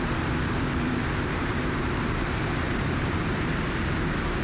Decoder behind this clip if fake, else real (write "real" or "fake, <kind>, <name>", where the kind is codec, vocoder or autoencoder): fake, vocoder, BigVGAN v2